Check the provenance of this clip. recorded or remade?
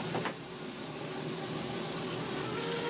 recorded